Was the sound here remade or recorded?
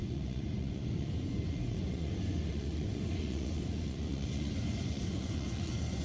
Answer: remade